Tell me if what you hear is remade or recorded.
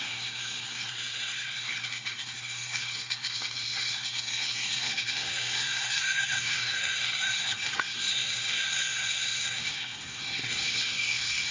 remade